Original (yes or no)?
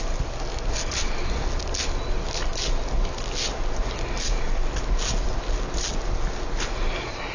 yes